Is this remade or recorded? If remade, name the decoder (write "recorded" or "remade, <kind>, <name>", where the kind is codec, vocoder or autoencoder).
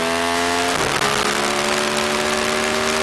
recorded